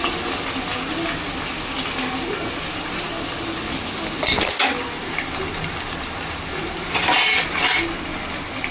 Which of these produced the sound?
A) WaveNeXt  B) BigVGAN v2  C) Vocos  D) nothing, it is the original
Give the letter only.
D